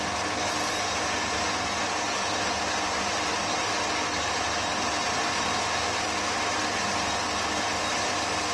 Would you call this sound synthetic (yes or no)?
no